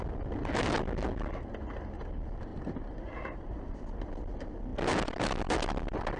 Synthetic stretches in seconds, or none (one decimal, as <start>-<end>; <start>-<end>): 2.5-4.1